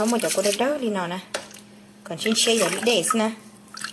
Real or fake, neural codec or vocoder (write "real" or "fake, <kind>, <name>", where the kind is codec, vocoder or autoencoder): fake, vocoder, BigVGAN v2